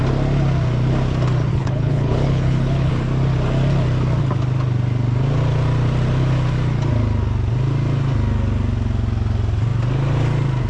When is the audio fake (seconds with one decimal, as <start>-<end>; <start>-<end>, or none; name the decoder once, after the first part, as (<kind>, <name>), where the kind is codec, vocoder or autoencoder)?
1.5-2.9 (codec, HILCodec)